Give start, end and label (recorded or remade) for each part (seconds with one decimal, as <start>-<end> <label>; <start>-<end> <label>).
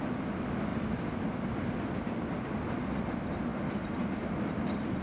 0.0-5.0 recorded